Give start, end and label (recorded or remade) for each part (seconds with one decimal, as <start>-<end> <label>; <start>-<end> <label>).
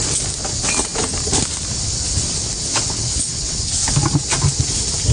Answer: 0.0-2.7 recorded; 2.7-3.7 remade; 3.7-5.1 recorded